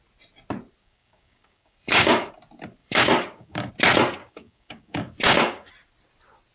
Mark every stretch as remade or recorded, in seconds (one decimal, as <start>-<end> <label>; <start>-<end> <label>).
0.0-0.8 recorded; 0.8-2.3 remade; 2.3-2.8 recorded; 2.8-3.7 remade; 3.7-4.2 recorded; 4.2-5.7 remade; 5.7-6.5 recorded